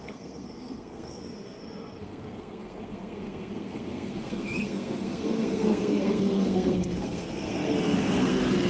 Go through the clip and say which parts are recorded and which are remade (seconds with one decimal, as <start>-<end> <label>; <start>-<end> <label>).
0.0-8.7 remade